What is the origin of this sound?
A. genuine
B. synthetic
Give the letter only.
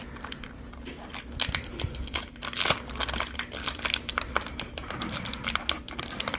A